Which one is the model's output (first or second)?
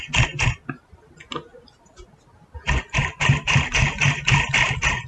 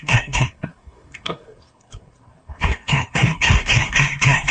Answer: second